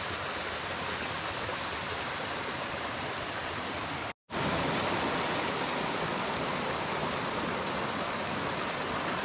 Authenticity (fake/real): real